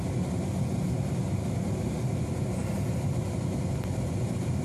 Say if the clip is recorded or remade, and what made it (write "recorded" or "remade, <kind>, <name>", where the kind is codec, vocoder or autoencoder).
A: recorded